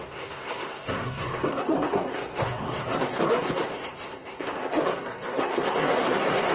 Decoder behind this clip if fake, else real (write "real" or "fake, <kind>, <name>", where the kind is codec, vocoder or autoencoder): fake, codec, SNAC